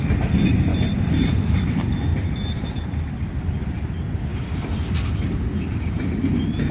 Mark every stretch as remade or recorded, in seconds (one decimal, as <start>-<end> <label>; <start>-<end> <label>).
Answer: 0.0-6.7 recorded